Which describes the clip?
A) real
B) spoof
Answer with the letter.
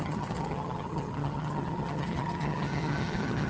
B